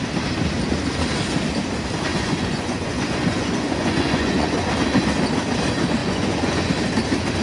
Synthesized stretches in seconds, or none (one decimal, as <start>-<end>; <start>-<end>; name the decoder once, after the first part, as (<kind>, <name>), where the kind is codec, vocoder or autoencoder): 2.1-4.7 (vocoder, Vocos); 6.0-6.7